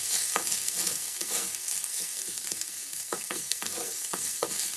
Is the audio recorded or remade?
remade